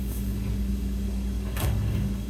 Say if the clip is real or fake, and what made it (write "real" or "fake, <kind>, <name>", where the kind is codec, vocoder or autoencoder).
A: fake, codec, DAC